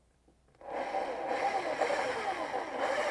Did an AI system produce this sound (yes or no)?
no